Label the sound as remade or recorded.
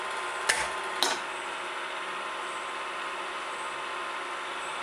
recorded